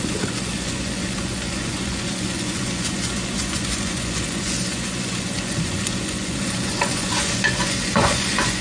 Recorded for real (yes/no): no